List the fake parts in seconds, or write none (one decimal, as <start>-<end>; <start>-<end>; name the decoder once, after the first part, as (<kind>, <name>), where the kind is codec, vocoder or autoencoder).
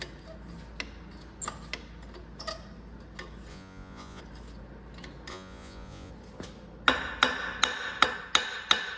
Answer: 3.5-4.2 (vocoder, Vocos); 5.3-6.1